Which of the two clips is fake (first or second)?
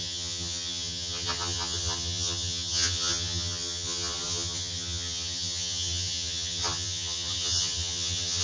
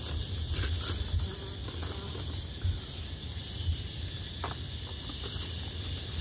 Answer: first